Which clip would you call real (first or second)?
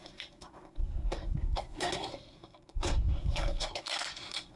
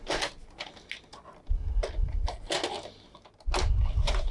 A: second